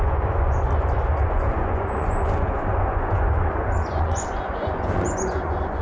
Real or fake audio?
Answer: fake